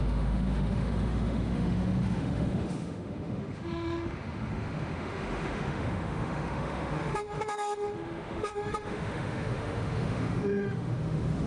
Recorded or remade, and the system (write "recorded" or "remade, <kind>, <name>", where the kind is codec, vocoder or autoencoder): remade, autoencoder, DAC-VAE